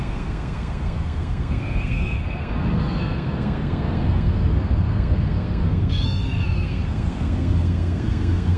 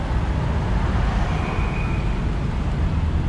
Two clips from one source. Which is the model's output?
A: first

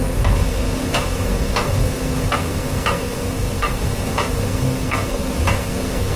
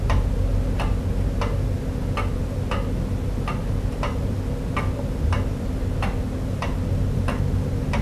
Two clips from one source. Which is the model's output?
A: first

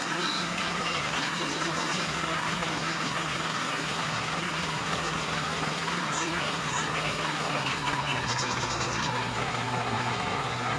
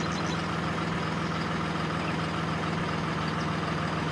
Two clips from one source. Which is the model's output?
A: first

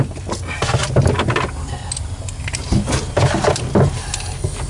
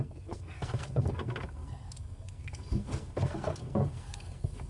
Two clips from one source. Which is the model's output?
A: second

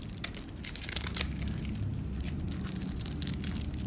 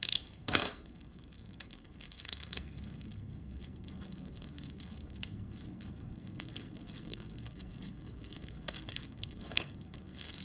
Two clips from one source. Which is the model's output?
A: second